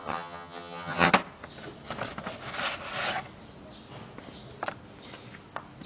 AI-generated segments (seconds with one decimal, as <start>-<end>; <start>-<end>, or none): 0.0-1.1